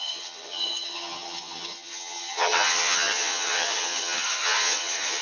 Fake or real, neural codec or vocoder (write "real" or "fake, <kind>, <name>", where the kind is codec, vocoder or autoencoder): fake, vocoder, HiFi-GAN